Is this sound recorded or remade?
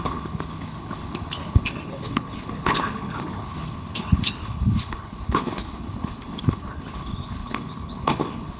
remade